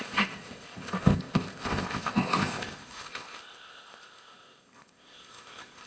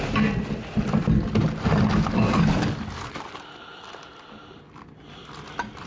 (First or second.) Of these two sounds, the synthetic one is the first